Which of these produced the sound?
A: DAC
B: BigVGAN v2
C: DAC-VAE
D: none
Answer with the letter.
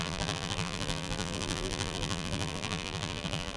B